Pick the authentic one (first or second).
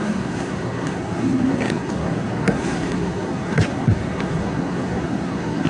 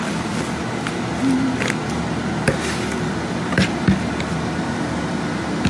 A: second